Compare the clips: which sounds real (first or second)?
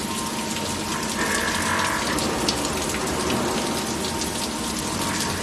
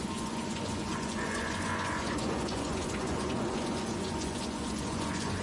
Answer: first